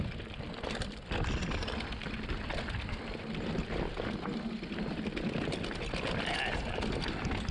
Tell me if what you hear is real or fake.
real